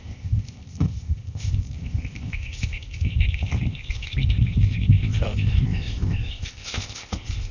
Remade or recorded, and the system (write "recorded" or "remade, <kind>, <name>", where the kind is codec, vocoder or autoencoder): remade, codec, ZipCodec